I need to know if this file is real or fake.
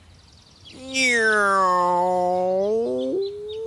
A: real